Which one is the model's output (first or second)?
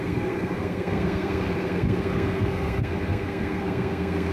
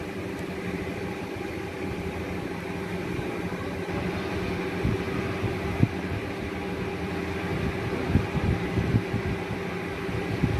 first